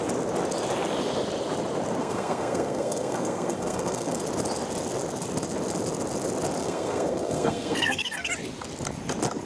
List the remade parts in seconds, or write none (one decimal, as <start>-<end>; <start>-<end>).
2.0-4.2; 6.6-8.3